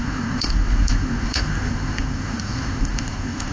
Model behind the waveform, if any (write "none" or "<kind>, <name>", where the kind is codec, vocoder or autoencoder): codec, SNAC